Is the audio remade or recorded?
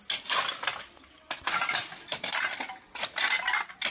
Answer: recorded